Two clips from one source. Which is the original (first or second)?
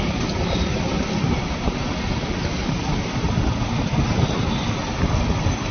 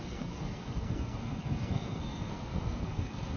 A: first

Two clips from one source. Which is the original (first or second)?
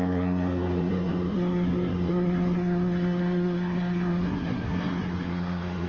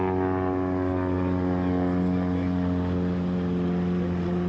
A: second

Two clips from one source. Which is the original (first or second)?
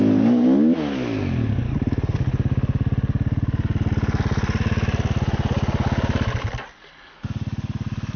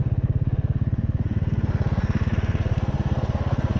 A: first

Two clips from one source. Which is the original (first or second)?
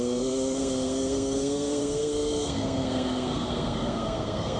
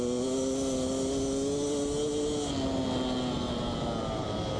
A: second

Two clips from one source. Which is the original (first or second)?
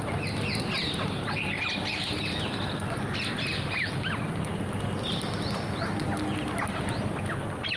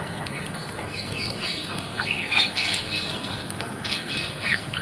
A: first